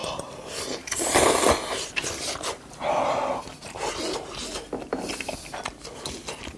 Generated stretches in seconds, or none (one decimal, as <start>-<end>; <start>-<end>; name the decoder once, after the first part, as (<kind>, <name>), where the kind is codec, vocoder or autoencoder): 0.0-3.4 (vocoder, BigVGAN v2)